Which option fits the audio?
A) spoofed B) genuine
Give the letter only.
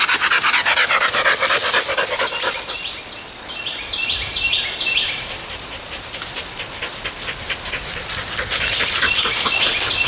B